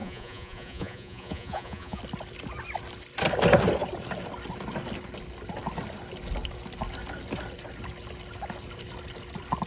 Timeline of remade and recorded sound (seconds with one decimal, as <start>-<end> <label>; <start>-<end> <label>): 0.0-2.0 remade; 2.0-9.7 recorded